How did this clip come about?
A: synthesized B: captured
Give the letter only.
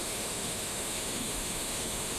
A